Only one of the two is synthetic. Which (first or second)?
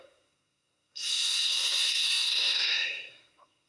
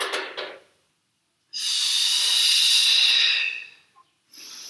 first